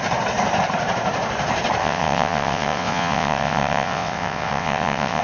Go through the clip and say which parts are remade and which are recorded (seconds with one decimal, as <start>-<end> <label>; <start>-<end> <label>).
0.0-1.8 recorded; 1.8-5.2 remade